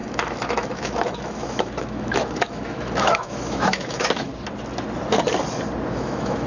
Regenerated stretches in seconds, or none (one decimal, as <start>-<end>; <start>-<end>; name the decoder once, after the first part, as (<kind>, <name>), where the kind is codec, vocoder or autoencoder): 0.0-4.3 (autoencoder, DAC-VAE); 5.9-6.5